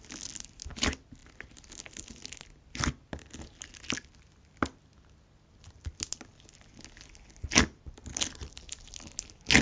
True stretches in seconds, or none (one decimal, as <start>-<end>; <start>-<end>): 0.0-9.6